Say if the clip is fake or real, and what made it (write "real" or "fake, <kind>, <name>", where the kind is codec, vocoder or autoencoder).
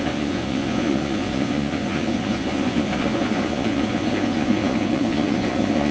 fake, vocoder, Vocos